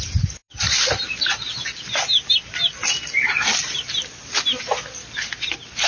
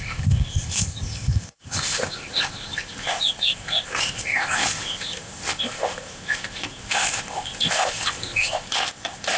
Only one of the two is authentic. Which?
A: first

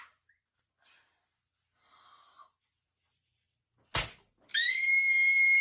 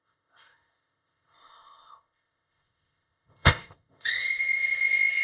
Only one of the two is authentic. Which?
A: first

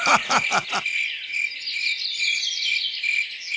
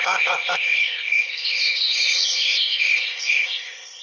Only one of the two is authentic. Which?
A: first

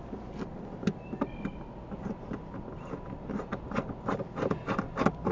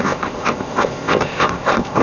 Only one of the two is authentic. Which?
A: first